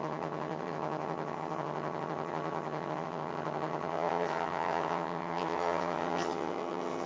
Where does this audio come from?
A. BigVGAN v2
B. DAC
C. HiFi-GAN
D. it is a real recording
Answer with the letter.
C